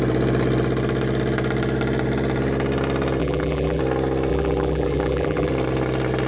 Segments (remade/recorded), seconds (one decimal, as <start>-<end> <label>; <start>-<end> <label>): 0.0-3.2 recorded; 3.2-3.8 remade; 3.8-4.3 recorded; 4.3-5.5 remade; 5.5-6.3 recorded